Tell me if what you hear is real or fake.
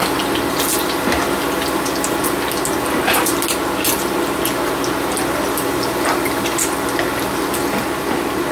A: real